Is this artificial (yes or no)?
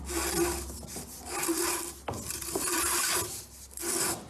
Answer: no